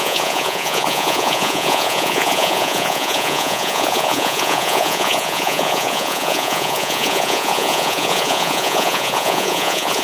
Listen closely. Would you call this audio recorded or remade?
remade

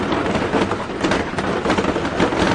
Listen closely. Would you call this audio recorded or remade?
recorded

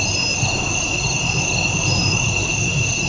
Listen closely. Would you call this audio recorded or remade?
recorded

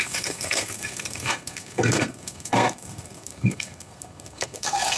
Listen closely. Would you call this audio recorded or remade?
remade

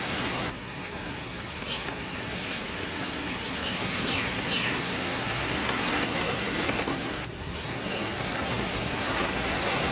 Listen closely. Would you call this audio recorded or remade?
remade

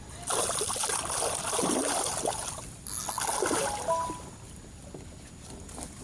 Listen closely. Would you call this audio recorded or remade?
recorded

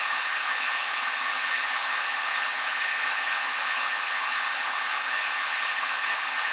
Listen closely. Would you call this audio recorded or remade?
remade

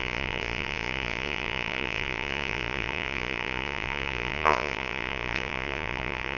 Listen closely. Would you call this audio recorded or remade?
remade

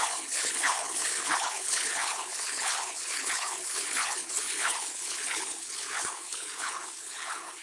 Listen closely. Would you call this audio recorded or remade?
remade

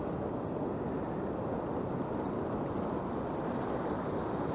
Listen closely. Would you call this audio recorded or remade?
recorded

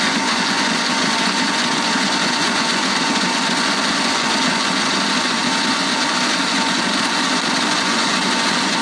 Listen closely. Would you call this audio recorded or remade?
remade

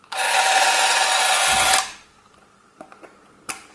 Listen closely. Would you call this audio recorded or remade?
recorded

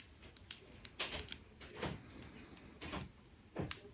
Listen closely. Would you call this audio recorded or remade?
recorded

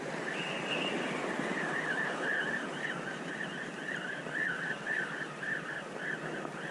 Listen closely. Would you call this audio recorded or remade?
recorded